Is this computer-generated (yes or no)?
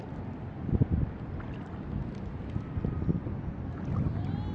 no